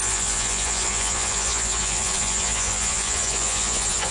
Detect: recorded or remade remade